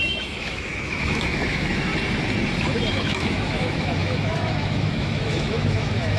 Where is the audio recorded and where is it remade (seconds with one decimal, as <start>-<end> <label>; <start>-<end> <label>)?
0.0-1.9 remade; 1.9-2.9 recorded; 2.9-6.2 remade